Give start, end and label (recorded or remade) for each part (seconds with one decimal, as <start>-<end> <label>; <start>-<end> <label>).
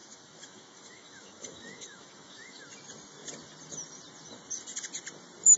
0.0-2.6 remade; 2.6-5.6 recorded